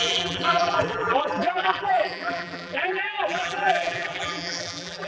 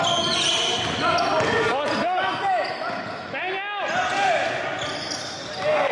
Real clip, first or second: second